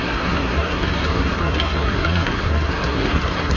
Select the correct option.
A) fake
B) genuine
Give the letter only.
A